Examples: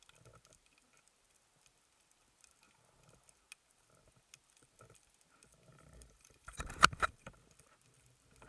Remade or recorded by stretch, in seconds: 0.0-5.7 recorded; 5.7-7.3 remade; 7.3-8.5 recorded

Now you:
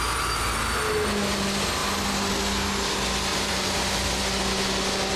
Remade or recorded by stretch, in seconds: 0.0-3.3 recorded; 3.3-4.2 remade; 4.2-5.2 recorded

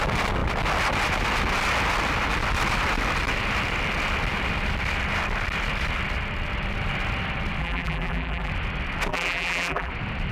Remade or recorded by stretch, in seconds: 0.0-7.6 recorded; 7.6-8.5 remade; 8.5-9.1 recorded; 9.1-9.9 remade; 9.9-10.3 recorded